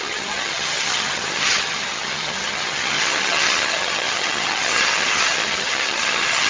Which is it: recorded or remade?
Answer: remade